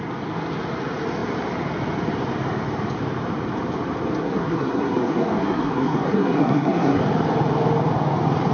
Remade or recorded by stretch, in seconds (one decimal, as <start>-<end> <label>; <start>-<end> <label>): 0.0-4.2 recorded; 4.2-7.0 remade; 7.0-8.5 recorded